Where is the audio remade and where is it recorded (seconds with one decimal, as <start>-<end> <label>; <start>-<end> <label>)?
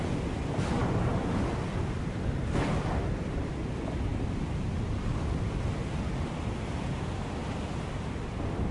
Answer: 0.0-8.7 recorded